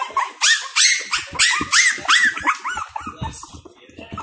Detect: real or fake real